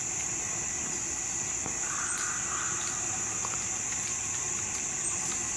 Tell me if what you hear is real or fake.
real